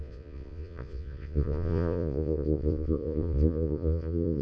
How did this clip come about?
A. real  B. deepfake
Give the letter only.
B